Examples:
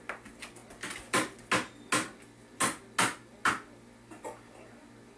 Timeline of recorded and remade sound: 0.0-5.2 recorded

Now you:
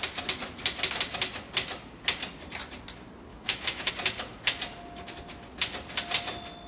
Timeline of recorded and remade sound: 0.0-3.3 recorded; 3.3-3.9 remade; 3.9-6.7 recorded

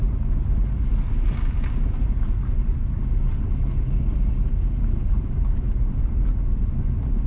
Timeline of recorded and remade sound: 0.0-4.2 recorded; 4.2-6.0 remade; 6.0-7.3 recorded

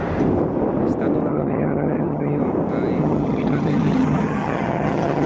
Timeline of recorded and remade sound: 0.0-1.3 recorded; 1.3-2.4 remade; 2.4-3.0 recorded; 3.0-5.3 remade

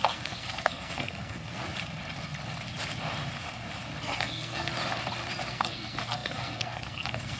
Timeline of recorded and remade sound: 0.0-1.6 remade; 1.6-4.0 recorded; 4.0-4.7 remade; 4.7-5.5 recorded; 5.5-7.4 remade

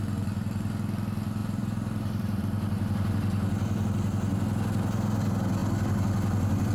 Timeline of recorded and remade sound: 0.0-1.4 recorded; 1.4-2.4 remade; 2.4-6.7 recorded

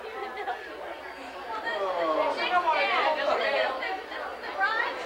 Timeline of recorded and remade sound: 0.0-5.1 recorded

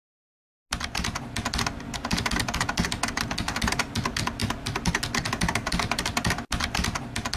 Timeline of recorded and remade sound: 0.0-7.4 recorded